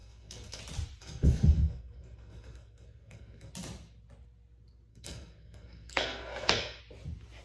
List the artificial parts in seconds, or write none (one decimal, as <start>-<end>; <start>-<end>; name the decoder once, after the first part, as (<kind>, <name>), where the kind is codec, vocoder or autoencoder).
0.0-0.6 (codec, SNAC); 1.0-3.5; 4.9-6.8